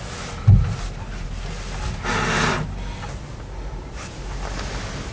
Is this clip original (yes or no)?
yes